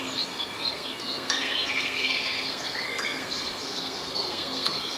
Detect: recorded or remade remade